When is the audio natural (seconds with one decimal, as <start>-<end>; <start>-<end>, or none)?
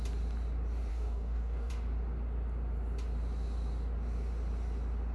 0.0-0.9; 1.7-5.1